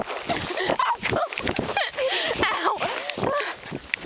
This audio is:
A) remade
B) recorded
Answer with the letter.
B